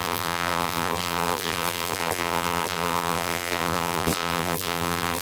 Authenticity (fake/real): fake